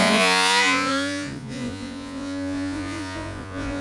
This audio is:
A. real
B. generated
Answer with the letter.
B